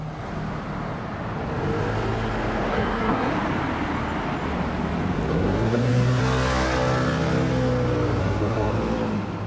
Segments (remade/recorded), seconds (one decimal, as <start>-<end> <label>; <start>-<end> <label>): 0.0-2.7 recorded; 2.7-3.3 remade; 3.3-5.3 recorded; 5.3-6.2 remade; 6.2-8.2 recorded; 8.2-8.7 remade; 8.7-9.5 recorded